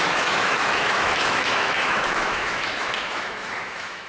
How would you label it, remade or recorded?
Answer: remade